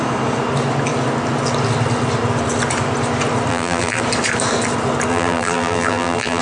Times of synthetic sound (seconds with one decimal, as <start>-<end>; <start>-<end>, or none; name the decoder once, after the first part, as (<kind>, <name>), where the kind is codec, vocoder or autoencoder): 3.5-4.0 (vocoder, BigVGAN v2); 5.1-6.4